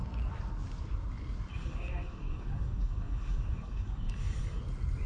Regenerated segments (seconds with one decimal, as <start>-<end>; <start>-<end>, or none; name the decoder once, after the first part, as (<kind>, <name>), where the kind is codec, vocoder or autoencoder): 1.5-4.6 (codec, DAC)